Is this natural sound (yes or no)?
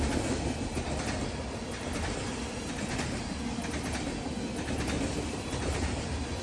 yes